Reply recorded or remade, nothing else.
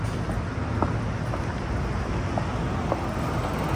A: recorded